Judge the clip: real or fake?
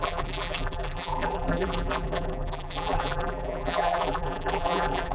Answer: fake